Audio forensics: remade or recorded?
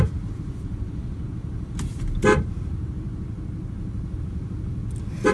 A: recorded